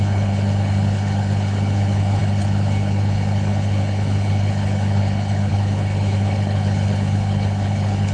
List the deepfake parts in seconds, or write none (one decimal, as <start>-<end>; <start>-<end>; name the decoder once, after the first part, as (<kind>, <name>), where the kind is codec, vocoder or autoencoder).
0.0-8.1 (codec, HILCodec)